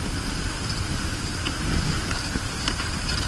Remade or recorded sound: recorded